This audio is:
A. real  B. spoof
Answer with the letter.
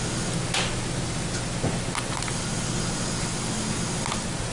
A